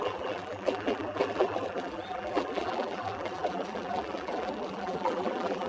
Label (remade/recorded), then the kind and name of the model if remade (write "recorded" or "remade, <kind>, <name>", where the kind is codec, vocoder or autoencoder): remade, vocoder, BigVGAN v2